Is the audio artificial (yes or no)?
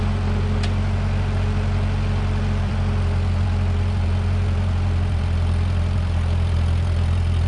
yes